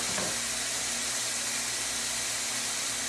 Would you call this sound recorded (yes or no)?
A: yes